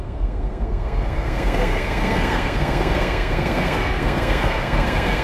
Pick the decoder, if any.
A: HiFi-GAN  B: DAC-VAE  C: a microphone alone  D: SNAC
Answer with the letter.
D